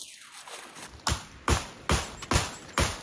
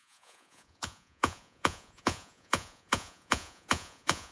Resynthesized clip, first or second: second